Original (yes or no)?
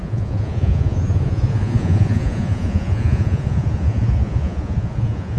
no